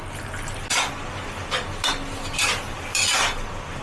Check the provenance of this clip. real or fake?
real